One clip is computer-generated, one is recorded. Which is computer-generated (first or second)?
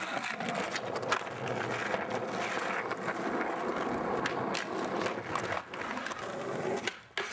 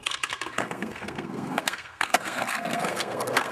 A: second